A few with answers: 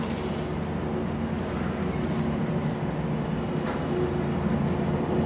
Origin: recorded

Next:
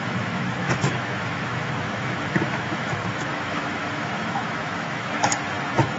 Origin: remade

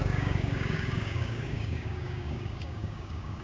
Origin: remade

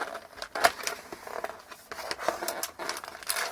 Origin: recorded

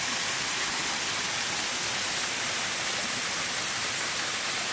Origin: recorded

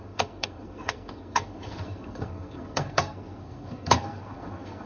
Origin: remade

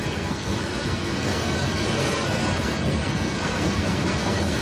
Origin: remade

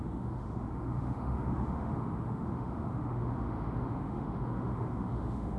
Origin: remade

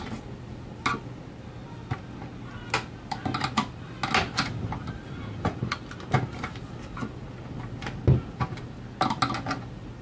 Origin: recorded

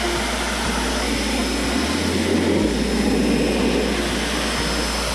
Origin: recorded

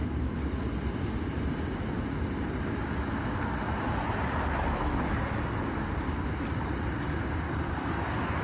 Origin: recorded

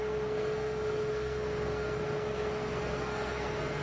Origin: remade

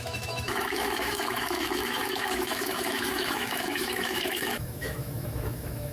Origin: remade